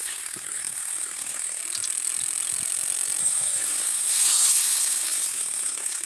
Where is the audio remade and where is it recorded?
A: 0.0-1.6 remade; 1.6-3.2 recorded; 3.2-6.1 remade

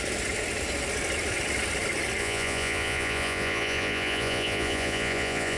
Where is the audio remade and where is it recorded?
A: 0.0-2.2 recorded; 2.2-5.6 remade

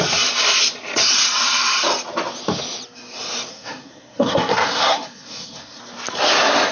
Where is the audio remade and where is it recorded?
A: 0.0-3.5 recorded; 3.5-5.8 remade; 5.8-6.7 recorded

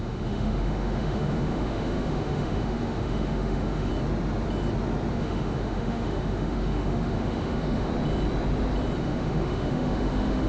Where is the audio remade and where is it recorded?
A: 0.0-3.9 remade; 3.9-5.1 recorded; 5.1-7.9 remade; 7.9-9.0 recorded; 9.0-10.5 remade

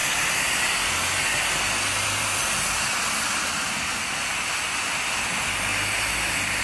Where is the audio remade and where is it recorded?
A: 0.0-6.6 recorded

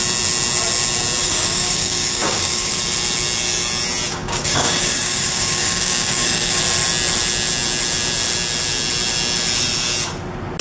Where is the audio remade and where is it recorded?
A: 0.0-1.2 recorded; 1.2-2.8 remade; 2.8-4.1 recorded; 4.1-6.6 remade; 6.6-10.6 recorded

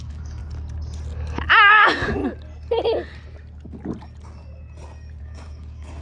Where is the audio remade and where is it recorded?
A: 0.0-0.4 remade; 0.4-1.7 recorded; 1.7-2.2 remade; 2.2-5.2 recorded; 5.2-6.0 remade